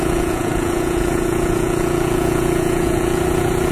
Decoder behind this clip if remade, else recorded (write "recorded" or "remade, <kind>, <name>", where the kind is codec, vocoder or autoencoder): remade, vocoder, Vocos